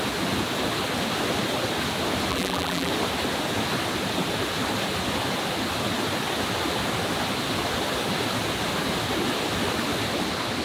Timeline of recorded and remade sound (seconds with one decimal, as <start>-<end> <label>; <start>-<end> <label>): 0.0-2.3 recorded; 2.3-2.9 remade; 2.9-10.6 recorded